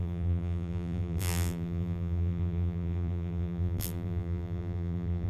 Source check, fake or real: fake